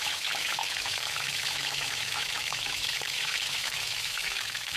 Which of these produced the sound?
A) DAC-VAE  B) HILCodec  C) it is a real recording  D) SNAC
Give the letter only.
A